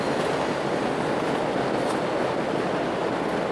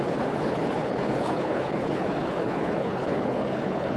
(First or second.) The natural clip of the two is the first